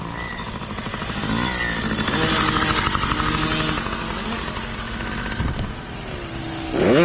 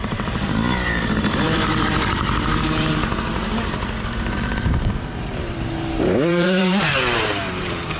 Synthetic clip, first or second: second